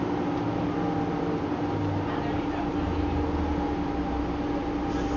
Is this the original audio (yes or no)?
yes